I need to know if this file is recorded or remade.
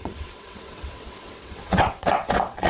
remade